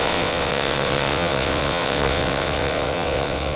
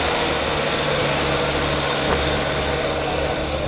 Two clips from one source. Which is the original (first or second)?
second